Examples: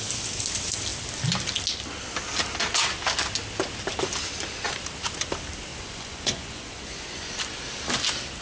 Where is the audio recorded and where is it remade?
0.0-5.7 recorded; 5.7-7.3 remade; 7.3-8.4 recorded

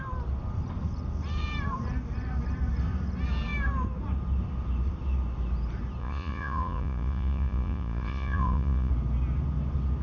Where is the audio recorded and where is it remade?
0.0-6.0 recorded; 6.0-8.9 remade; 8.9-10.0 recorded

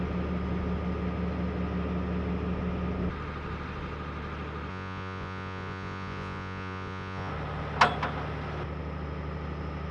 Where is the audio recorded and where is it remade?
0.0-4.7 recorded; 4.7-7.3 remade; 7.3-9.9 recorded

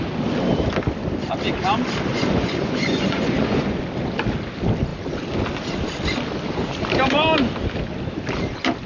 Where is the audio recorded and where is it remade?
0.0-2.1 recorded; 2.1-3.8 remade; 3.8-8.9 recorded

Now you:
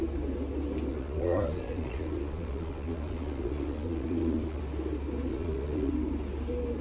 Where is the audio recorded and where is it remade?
0.0-0.9 recorded; 0.9-4.6 remade; 4.6-5.3 recorded; 5.3-5.9 remade; 5.9-6.8 recorded